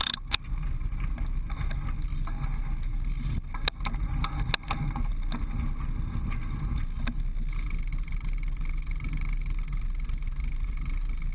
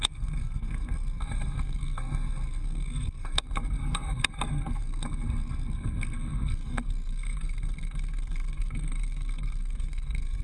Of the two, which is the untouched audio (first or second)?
first